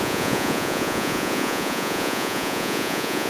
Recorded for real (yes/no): no